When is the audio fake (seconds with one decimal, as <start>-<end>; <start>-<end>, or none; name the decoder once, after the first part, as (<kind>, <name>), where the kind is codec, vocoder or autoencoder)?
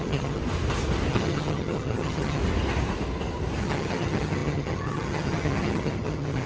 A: 0.0-0.4 (vocoder, HiFi-GAN); 1.1-2.4; 3.6-6.5